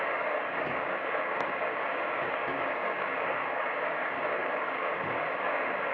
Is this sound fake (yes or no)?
yes